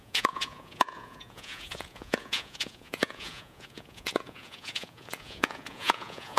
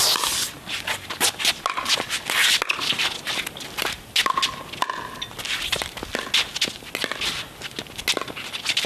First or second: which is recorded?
second